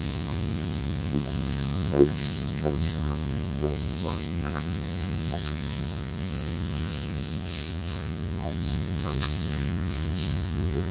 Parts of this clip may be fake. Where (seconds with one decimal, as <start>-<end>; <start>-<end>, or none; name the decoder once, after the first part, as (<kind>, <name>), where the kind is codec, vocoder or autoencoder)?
0.0-10.9 (vocoder, Vocos)